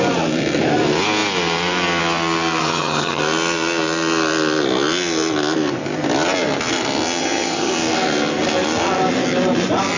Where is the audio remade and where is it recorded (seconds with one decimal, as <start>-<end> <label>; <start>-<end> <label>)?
0.0-2.6 recorded; 2.6-3.2 remade; 3.2-7.2 recorded; 7.2-7.7 remade; 7.7-10.0 recorded